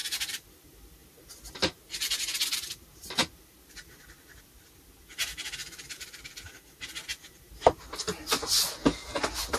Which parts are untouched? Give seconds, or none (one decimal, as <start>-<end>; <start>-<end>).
4.4-5.6; 6.4-7.1; 7.9-9.6